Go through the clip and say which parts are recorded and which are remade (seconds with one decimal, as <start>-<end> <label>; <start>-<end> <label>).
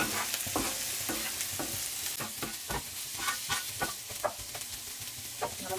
0.0-5.8 recorded